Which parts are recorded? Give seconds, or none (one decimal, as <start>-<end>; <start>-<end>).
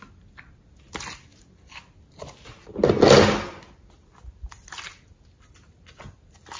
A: 0.0-6.6